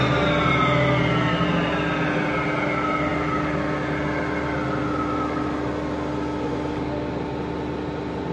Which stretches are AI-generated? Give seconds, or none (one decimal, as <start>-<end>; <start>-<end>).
none